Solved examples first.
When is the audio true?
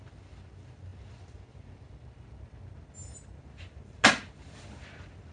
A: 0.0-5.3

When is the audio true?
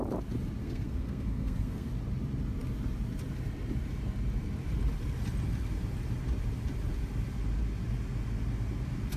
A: 0.0-0.6; 1.9-9.2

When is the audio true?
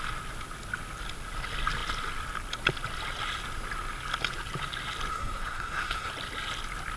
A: 0.0-5.1; 6.1-7.0